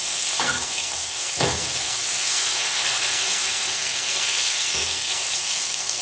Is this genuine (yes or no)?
no